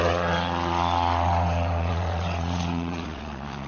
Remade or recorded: remade